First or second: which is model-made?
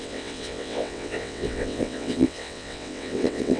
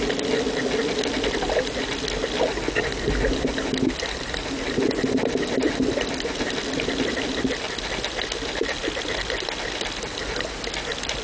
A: first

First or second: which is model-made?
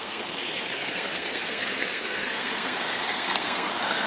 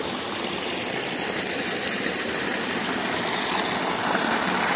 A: first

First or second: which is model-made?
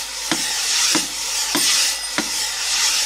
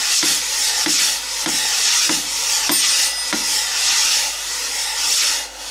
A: first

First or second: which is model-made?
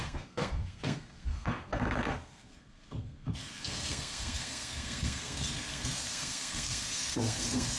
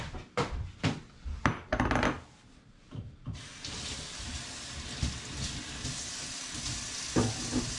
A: first